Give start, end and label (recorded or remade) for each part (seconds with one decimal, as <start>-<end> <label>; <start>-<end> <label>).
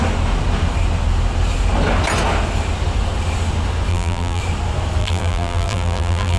0.0-3.9 recorded; 3.9-4.4 remade; 4.4-5.0 recorded; 5.0-6.4 remade